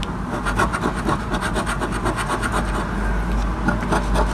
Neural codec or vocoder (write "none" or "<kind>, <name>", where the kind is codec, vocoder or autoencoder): none